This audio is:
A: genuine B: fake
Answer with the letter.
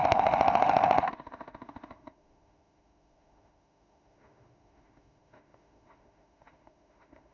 B